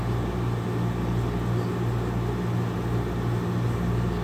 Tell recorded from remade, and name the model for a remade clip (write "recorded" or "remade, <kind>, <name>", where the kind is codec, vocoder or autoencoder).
recorded